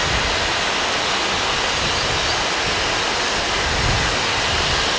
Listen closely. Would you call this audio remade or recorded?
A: recorded